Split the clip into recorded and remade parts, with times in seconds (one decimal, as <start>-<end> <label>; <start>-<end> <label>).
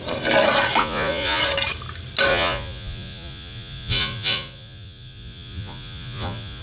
0.0-0.8 recorded; 0.8-1.4 remade; 1.4-2.3 recorded; 2.3-6.6 remade